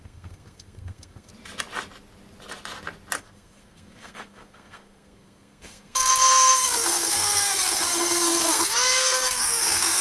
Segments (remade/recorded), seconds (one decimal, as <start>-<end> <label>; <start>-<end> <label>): 0.0-1.3 remade; 1.3-3.2 recorded; 3.2-10.0 remade